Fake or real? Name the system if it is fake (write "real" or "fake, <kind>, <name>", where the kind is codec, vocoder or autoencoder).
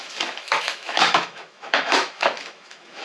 fake, autoencoder, DAC-VAE